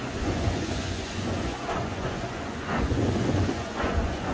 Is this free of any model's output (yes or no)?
no